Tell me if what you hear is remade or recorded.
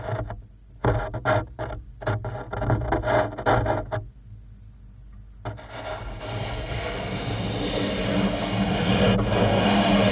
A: recorded